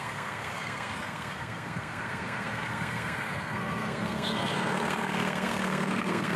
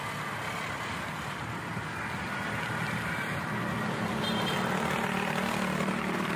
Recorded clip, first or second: second